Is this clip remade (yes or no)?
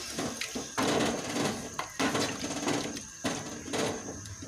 no